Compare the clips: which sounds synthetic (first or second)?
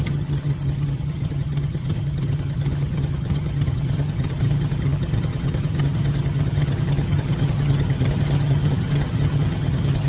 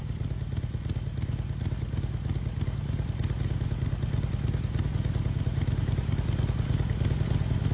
first